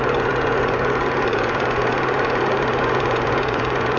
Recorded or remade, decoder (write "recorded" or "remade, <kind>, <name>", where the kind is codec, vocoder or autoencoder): remade, vocoder, Vocos